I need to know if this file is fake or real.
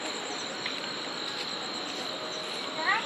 real